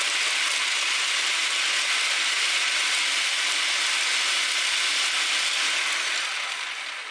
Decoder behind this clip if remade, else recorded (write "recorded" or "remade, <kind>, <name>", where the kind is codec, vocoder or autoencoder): recorded